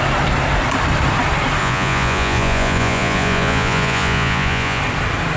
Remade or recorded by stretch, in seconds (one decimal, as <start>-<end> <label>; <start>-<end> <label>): 0.0-1.6 recorded; 1.6-4.8 remade; 4.8-5.4 recorded